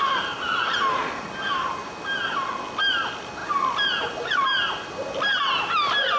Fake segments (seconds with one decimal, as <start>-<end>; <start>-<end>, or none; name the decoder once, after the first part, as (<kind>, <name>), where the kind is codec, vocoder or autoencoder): none